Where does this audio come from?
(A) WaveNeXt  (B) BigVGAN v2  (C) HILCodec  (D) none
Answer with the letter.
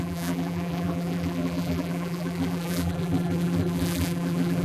B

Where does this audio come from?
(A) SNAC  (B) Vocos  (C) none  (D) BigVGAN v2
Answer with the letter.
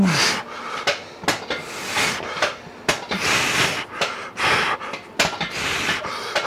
C